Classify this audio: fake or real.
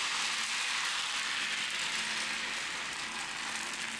real